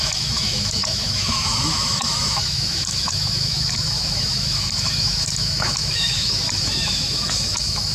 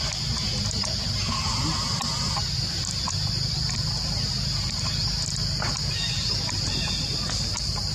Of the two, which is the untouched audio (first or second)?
second